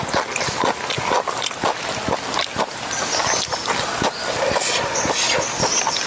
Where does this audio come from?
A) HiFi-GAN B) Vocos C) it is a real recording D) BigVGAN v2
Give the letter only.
C